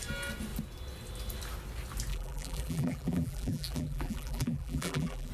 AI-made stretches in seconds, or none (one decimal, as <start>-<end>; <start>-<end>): 2.1-5.3